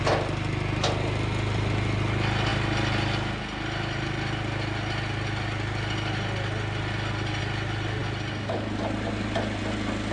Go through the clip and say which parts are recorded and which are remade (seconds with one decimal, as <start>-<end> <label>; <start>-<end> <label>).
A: 0.0-10.1 recorded